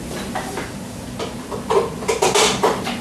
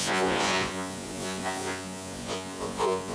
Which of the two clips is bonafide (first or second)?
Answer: first